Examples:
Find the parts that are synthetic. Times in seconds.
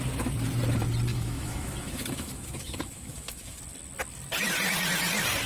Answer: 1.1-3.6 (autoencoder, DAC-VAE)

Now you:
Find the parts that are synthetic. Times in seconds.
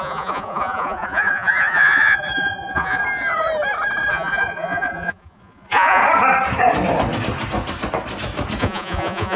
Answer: 0.0-3.0 (vocoder, Vocos); 4.1-6.0; 8.6-9.4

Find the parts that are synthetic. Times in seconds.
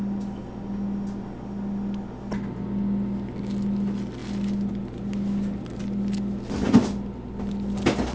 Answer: none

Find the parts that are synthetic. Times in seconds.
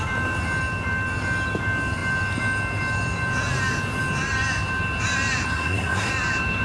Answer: 5.5-6.1 (codec, SNAC)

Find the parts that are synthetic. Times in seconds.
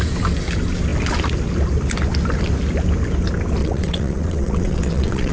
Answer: 3.6-5.3 (vocoder, WaveNeXt)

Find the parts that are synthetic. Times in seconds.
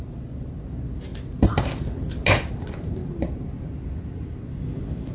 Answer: none